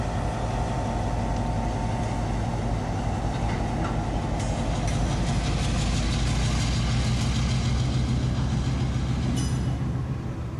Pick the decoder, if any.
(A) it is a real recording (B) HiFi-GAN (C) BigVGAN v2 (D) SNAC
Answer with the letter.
A